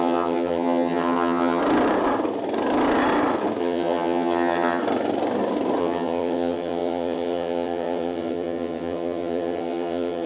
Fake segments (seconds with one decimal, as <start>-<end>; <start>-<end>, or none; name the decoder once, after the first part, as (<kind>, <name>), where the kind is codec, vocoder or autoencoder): 0.0-1.6 (vocoder, HiFi-GAN); 3.6-4.8; 5.8-10.3